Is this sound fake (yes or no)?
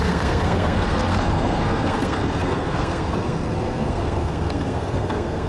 yes